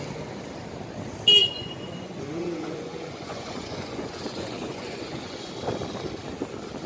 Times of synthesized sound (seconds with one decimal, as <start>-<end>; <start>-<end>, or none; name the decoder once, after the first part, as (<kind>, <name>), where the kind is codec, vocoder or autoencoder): 1.4-5.5 (vocoder, Vocos)